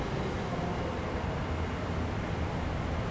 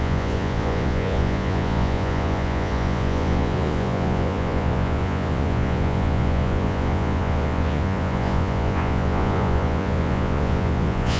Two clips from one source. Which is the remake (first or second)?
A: second